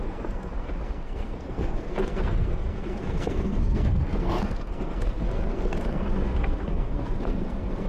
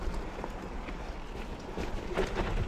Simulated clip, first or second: first